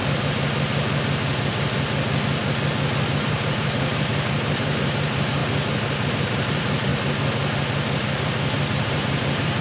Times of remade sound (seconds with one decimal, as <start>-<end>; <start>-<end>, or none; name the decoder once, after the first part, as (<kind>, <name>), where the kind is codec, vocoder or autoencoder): 3.1-5.4 (vocoder, BigVGAN v2); 6.1-6.9; 8.2-9.6